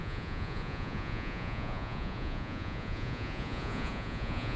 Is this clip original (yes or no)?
no